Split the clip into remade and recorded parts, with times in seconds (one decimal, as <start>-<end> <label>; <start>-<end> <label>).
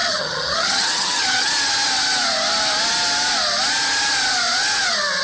0.0-1.5 remade; 1.5-5.2 recorded